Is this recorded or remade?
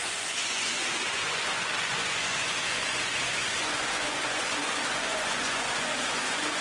remade